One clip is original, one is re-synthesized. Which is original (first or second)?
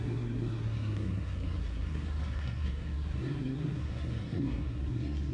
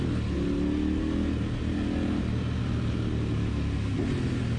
second